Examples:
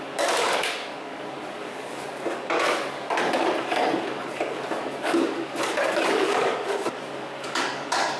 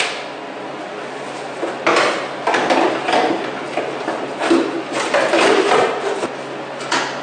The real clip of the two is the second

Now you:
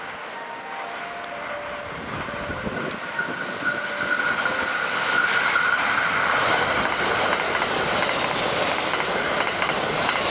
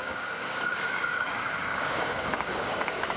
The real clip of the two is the first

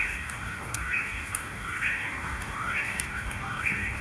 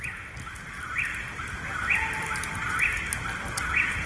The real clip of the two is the second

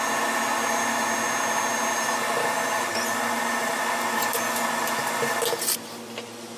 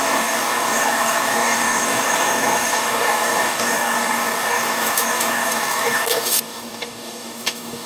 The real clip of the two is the first